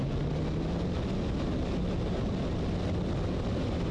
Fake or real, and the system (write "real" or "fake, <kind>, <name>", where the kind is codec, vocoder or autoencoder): real